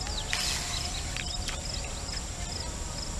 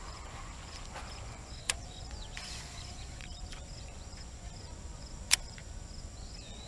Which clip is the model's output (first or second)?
second